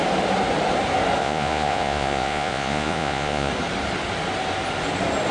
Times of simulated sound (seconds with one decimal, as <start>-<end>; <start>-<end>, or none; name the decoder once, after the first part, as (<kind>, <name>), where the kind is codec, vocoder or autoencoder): 1.2-3.5 (vocoder, Vocos)